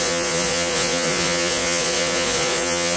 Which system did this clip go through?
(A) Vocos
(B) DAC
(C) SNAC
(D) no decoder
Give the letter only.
A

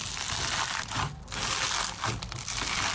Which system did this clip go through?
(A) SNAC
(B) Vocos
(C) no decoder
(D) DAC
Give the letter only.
C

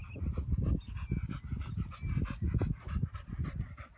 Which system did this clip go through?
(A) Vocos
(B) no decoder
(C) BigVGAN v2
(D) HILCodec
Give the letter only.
B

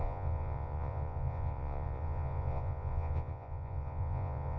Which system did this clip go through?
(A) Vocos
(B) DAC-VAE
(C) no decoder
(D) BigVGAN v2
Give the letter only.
A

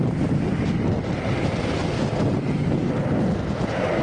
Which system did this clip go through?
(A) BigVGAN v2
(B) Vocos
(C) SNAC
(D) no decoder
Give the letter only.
D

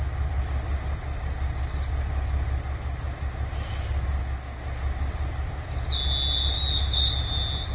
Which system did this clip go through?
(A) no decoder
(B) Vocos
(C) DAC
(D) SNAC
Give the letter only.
A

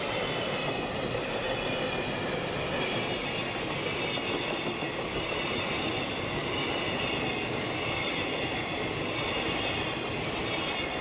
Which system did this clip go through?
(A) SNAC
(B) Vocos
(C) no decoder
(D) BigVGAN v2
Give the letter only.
C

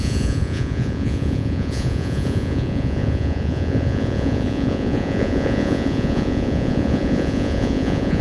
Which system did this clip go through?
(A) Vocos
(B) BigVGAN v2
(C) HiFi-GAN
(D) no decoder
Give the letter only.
A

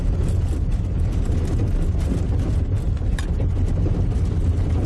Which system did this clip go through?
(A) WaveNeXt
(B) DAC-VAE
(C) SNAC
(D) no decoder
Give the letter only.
D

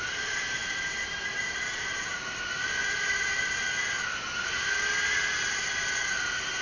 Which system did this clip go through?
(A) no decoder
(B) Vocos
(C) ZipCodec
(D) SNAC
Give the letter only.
A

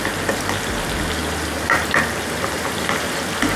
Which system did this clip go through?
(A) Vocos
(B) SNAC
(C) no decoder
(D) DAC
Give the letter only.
C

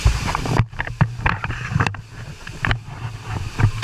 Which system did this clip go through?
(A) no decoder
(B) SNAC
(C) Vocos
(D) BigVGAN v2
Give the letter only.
D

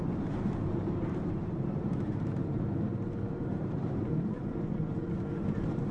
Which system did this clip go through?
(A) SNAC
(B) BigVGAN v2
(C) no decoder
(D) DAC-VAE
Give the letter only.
B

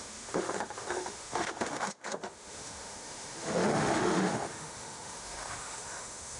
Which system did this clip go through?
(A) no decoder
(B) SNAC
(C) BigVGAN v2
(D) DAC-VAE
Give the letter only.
D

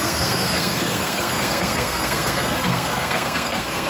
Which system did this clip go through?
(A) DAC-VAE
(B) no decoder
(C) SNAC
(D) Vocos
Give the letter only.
C